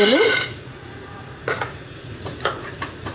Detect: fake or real fake